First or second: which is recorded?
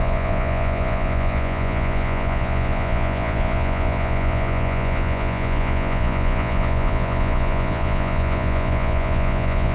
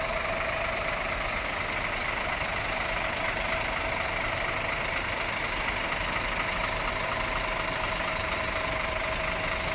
second